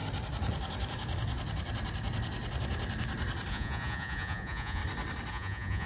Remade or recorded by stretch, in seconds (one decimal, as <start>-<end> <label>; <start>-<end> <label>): 0.0-3.5 recorded; 3.5-4.8 remade; 4.8-5.3 recorded; 5.3-5.9 remade